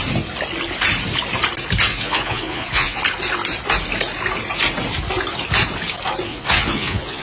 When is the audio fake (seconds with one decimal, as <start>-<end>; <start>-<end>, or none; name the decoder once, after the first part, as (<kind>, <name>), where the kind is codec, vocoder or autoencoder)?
1.9-3.0 (vocoder, Vocos); 6.3-7.2